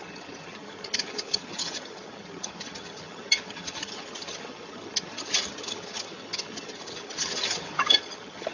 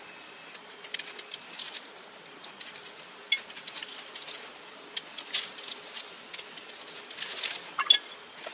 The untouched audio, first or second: second